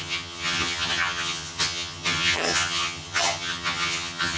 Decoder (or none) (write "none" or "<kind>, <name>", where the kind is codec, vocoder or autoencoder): vocoder, HiFi-GAN